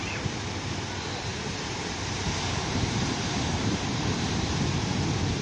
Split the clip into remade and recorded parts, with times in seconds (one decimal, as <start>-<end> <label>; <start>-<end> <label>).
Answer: 0.0-1.3 recorded; 1.3-4.5 remade; 4.5-5.4 recorded

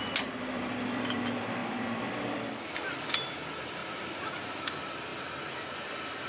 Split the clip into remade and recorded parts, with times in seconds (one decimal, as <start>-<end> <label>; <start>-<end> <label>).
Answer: 0.0-3.8 remade; 3.8-4.4 recorded; 4.4-5.1 remade; 5.1-6.3 recorded

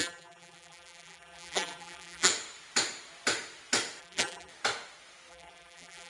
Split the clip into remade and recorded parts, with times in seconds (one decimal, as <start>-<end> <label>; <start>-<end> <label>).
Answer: 0.0-2.3 remade; 2.3-4.0 recorded; 4.0-4.5 remade; 4.5-5.3 recorded; 5.3-6.1 remade

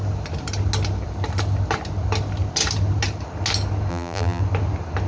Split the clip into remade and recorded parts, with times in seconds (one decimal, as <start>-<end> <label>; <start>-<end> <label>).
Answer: 0.0-3.9 recorded; 3.9-4.4 remade; 4.4-5.1 recorded

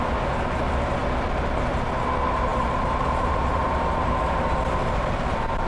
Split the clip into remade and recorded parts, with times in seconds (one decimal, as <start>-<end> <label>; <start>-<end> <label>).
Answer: 0.0-2.5 recorded; 2.5-4.1 remade; 4.1-4.8 recorded; 4.8-5.7 remade

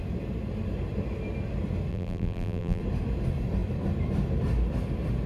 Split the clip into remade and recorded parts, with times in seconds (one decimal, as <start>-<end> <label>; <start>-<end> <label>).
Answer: 0.0-1.9 recorded; 1.9-2.8 remade; 2.8-5.3 recorded

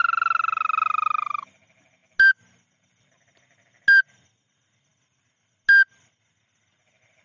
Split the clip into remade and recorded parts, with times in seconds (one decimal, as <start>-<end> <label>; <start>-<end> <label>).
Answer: 0.0-7.2 recorded